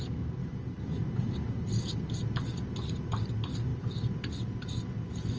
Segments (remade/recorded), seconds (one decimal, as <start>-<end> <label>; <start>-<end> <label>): 0.0-5.4 recorded